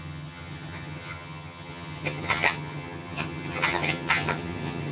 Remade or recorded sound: remade